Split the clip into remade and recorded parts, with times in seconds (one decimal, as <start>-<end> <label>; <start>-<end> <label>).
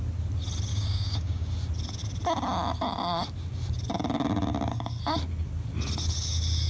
0.0-0.7 recorded; 0.7-1.5 remade; 1.5-6.7 recorded